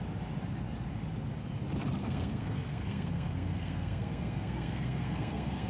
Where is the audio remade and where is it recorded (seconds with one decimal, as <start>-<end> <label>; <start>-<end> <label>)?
0.0-2.0 recorded; 2.0-5.7 remade